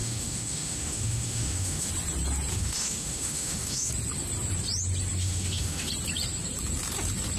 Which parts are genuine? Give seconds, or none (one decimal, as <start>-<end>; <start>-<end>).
1.9-2.5; 3.9-5.2; 5.9-7.4